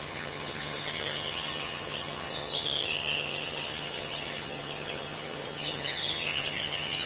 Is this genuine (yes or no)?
no